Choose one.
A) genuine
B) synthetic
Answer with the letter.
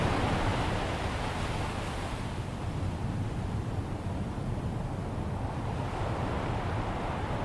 A